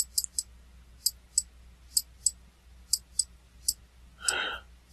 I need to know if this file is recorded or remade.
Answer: recorded